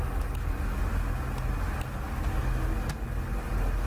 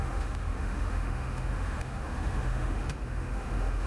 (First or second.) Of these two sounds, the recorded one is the first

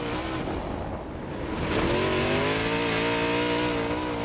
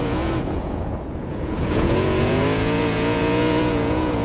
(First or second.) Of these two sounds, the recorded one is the first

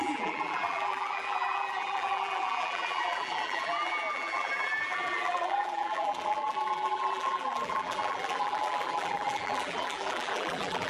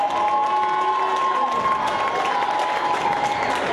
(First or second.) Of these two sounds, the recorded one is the second